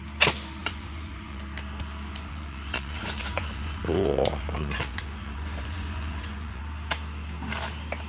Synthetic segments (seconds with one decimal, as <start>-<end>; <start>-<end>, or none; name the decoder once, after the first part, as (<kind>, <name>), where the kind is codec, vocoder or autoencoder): 0.6-1.4 (vocoder, Vocos); 2.1-6.6